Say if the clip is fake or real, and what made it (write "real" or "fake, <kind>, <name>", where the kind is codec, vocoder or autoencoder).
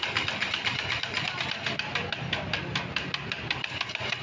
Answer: real